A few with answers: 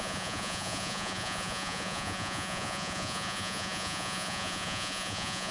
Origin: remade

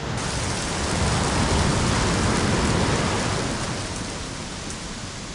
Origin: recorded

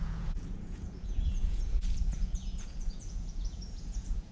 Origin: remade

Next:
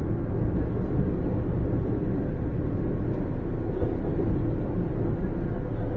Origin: recorded